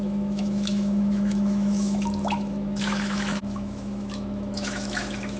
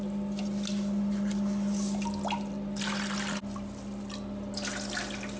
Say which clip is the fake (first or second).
first